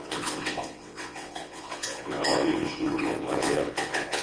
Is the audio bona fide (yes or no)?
no